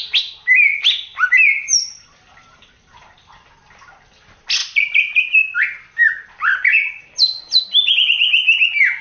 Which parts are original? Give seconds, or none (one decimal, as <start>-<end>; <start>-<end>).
0.0-1.1; 3.1-9.0